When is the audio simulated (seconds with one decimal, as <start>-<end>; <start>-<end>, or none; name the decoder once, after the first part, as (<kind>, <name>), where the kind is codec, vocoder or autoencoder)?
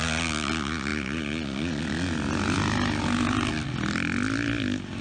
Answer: none